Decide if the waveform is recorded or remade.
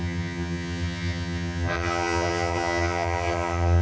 remade